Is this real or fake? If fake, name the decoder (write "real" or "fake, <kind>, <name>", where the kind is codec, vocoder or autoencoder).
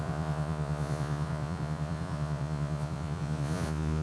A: fake, vocoder, Vocos